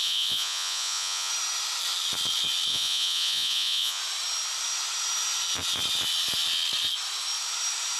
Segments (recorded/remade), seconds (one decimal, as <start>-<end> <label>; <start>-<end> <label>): 0.0-1.3 remade; 1.3-2.7 recorded; 2.7-4.0 remade; 4.0-8.0 recorded